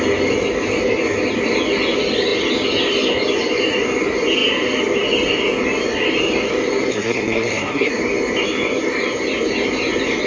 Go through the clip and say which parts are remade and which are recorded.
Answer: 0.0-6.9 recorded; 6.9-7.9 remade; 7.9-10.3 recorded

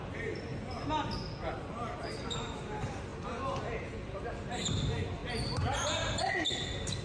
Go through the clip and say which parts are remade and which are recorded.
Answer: 0.0-7.0 recorded

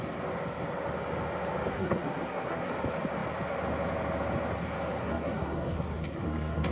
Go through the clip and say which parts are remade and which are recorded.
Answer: 0.0-1.7 recorded; 1.7-2.7 remade; 2.7-5.0 recorded; 5.0-6.7 remade

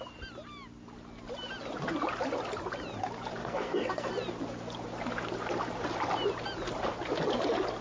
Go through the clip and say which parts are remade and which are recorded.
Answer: 0.0-3.4 recorded; 3.4-4.1 remade; 4.1-7.8 recorded

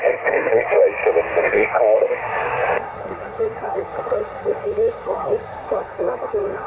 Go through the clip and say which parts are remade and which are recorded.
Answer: 0.0-0.8 remade; 0.8-1.4 recorded; 1.4-6.7 remade

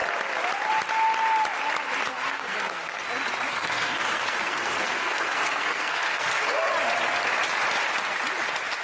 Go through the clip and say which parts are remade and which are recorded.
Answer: 0.0-2.1 recorded; 2.1-3.0 remade; 3.0-3.5 recorded; 3.5-6.7 remade; 6.7-8.8 recorded

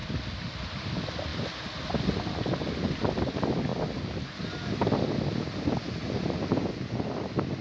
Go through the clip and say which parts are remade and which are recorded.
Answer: 0.0-7.6 recorded

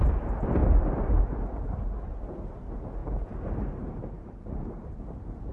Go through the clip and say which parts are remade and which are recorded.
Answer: 0.0-5.5 recorded